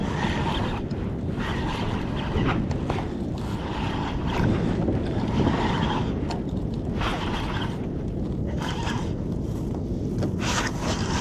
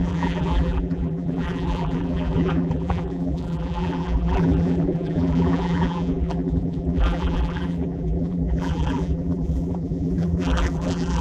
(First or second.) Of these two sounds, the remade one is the second